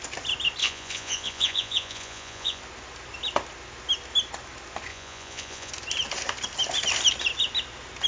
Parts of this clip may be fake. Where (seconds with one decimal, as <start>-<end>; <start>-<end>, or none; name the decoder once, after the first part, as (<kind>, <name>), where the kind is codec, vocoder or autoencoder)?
0.6-2.6 (vocoder, Vocos); 4.9-5.7